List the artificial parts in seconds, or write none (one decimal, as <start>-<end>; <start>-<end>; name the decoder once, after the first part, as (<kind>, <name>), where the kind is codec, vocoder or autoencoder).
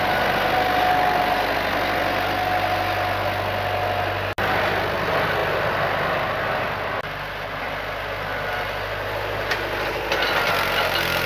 none